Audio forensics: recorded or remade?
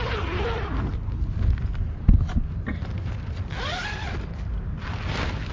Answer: recorded